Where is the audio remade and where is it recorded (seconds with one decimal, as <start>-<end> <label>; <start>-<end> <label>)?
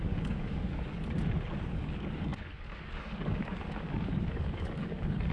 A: 0.0-1.2 remade; 1.2-1.7 recorded; 1.7-5.3 remade